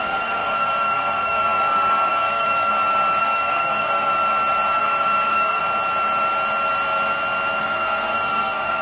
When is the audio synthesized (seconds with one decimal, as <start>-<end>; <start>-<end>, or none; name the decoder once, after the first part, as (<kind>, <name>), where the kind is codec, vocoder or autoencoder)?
0.0-2.7 (codec, SNAC); 3.2-4.1; 4.8-5.6; 7.6-8.8